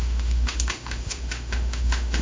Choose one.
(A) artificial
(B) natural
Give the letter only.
A